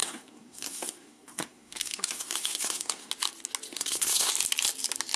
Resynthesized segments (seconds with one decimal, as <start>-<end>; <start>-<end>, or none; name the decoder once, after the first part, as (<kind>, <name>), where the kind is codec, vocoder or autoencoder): 0.0-3.1 (codec, SNAC); 3.7-4.3